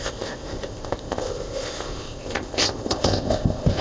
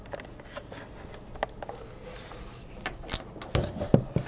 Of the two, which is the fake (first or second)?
first